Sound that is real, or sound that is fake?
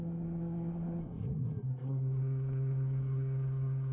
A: fake